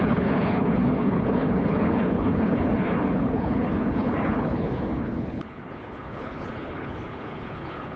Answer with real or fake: fake